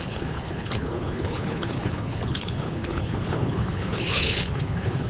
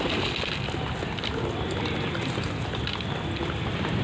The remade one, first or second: first